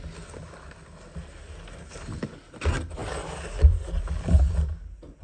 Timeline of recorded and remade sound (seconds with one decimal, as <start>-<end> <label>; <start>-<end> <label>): 0.0-5.2 recorded